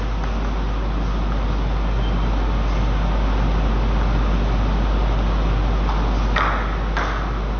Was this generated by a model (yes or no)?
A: no